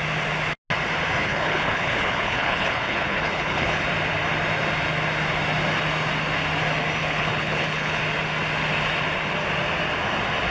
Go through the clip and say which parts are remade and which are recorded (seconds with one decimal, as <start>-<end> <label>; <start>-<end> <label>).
0.0-1.2 recorded; 1.2-3.8 remade; 3.8-7.0 recorded; 7.0-8.0 remade; 8.0-10.5 recorded